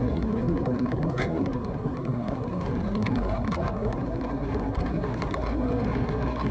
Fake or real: fake